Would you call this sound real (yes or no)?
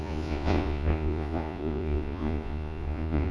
no